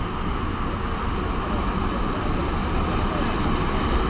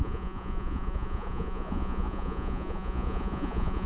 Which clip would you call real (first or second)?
first